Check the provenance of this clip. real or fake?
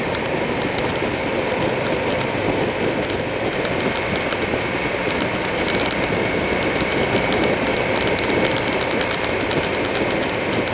real